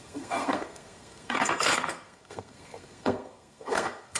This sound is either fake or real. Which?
fake